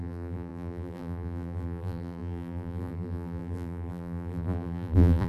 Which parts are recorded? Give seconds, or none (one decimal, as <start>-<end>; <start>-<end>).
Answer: none

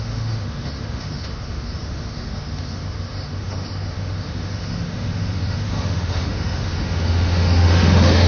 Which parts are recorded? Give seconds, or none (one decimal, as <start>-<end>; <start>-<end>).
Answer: none